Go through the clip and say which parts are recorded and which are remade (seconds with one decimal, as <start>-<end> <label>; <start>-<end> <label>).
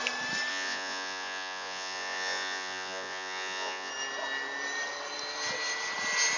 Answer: 0.0-0.5 recorded; 0.5-3.9 remade; 3.9-6.4 recorded